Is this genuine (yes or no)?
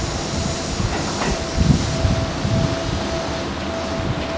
yes